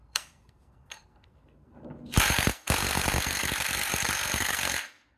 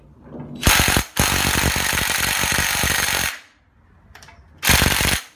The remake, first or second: first